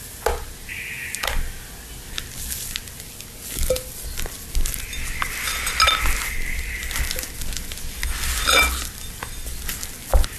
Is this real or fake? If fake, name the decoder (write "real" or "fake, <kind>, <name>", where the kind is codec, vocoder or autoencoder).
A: real